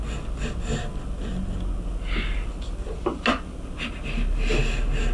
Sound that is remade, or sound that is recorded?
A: recorded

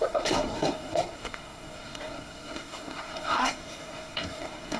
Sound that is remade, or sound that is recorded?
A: remade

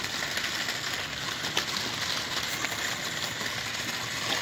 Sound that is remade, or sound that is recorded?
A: recorded